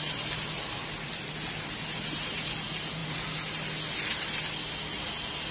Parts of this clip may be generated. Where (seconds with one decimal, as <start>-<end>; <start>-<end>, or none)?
none